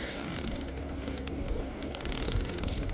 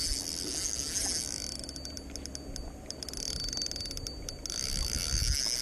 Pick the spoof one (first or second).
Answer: first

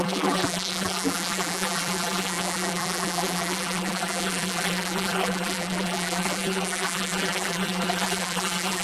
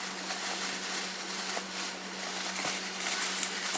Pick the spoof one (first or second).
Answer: first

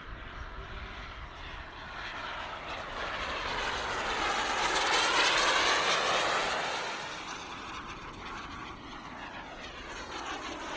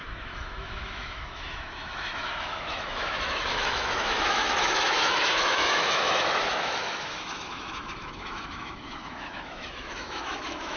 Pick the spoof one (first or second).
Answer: second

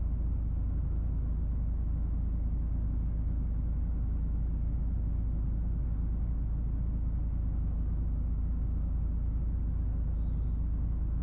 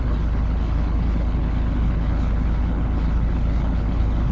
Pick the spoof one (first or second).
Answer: second